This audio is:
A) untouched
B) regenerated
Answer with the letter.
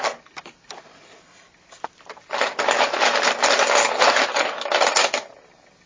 A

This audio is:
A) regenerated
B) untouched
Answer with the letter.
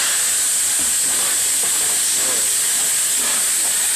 B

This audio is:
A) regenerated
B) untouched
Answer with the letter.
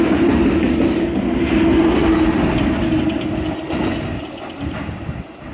B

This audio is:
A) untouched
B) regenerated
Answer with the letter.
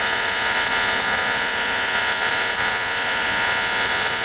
B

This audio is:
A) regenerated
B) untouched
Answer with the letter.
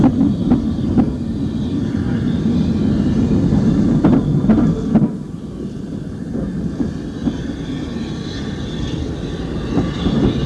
B